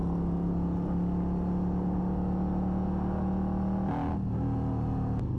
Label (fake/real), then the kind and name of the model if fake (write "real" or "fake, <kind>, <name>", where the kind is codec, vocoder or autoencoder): real